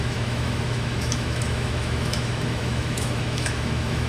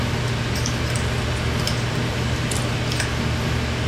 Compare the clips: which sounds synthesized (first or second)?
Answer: first